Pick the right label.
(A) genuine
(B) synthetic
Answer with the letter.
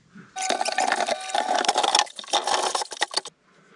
A